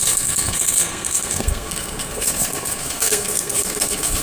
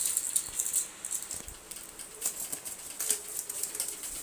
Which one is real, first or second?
second